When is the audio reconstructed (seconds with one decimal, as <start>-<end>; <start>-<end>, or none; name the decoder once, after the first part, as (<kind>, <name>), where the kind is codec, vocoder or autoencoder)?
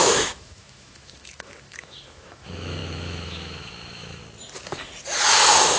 0.0-4.2 (autoencoder, DAC-VAE)